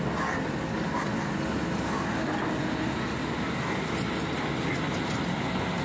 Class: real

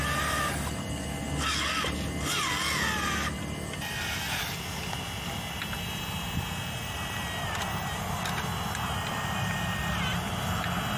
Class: real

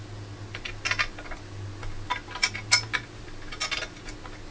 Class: real